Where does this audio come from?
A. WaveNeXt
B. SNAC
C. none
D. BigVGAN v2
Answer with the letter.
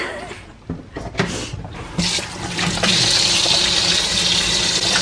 C